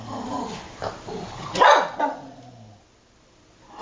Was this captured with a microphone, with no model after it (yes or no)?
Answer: yes